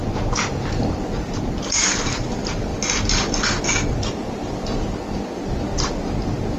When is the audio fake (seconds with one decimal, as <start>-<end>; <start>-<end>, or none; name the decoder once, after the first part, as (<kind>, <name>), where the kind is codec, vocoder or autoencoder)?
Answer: 0.7-2.7 (vocoder, BigVGAN v2)